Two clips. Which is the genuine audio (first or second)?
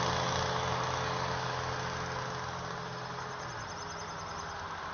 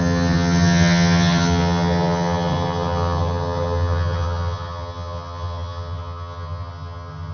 first